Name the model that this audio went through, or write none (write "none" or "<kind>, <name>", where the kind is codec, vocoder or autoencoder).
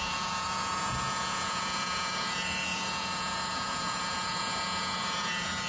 vocoder, Vocos